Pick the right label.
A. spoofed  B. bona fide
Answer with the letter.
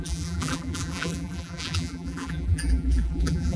A